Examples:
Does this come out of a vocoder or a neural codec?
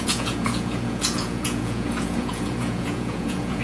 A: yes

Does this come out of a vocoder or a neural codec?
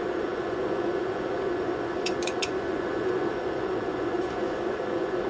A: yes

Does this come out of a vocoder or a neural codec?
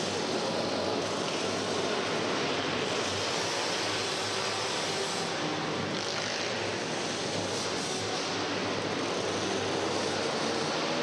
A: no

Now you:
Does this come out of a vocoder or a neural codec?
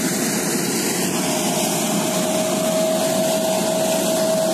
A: no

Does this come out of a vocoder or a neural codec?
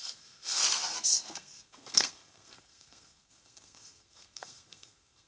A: yes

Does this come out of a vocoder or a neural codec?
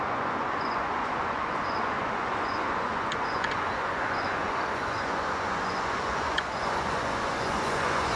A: yes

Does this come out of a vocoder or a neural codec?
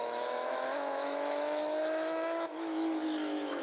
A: yes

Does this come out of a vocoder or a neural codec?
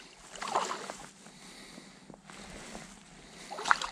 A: yes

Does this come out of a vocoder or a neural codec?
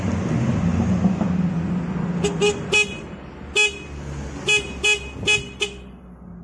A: no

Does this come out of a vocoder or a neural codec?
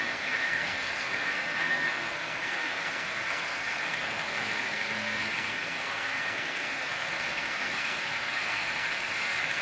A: yes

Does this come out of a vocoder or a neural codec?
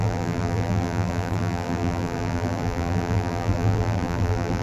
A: yes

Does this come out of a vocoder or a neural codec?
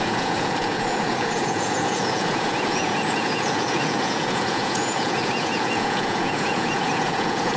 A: yes